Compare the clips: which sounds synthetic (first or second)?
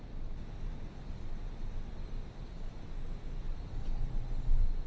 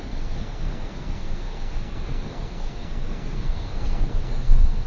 second